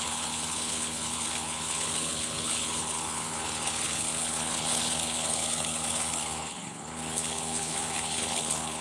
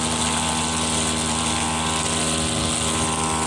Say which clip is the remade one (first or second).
first